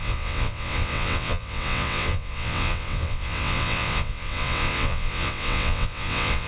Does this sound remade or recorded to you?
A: remade